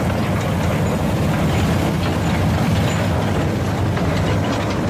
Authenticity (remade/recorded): recorded